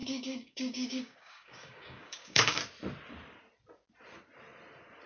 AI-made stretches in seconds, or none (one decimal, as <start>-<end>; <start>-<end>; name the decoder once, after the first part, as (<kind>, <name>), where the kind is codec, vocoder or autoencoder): 0.0-2.6 (codec, DAC)